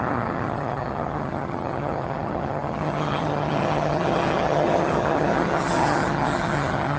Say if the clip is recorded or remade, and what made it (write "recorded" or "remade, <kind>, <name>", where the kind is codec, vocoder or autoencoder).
remade, vocoder, HiFi-GAN